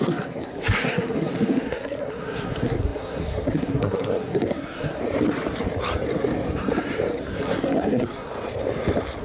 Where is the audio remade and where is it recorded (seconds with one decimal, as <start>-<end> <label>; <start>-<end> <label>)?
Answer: 0.0-5.0 remade; 5.0-7.2 recorded; 7.2-8.3 remade; 8.3-9.2 recorded